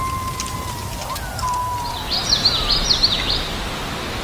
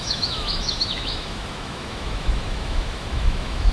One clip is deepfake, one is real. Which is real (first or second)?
first